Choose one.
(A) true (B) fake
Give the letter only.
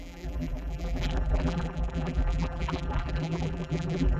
B